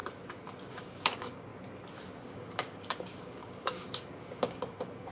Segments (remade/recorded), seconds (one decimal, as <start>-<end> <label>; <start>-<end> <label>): 0.0-0.7 recorded; 0.7-1.5 remade; 1.5-2.2 recorded; 2.2-5.1 remade